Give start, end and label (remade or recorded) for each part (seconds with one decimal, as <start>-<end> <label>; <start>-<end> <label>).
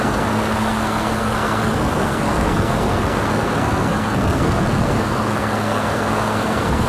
0.0-6.9 remade